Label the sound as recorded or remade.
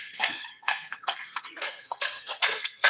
remade